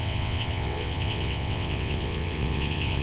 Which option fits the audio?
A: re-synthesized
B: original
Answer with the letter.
A